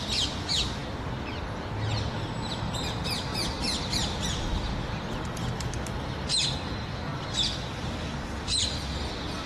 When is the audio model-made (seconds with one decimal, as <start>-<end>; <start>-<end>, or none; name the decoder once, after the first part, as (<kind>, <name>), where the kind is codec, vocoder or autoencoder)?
none